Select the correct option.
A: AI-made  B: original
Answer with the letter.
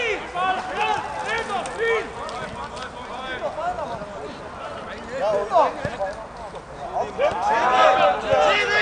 B